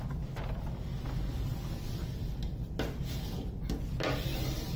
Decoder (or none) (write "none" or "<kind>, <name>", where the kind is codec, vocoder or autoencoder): none